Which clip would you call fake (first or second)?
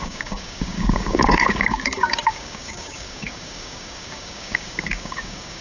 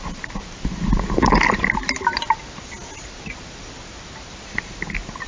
first